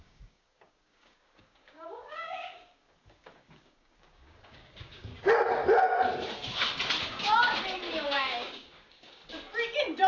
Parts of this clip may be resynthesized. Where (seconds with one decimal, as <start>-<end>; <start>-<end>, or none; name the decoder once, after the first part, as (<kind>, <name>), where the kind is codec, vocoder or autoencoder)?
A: 0.0-5.1 (codec, DAC); 7.0-7.4; 7.9-9.2